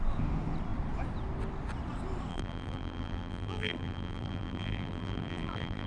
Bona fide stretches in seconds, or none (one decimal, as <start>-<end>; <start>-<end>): 0.0-2.3